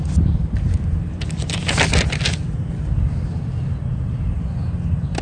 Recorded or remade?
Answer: recorded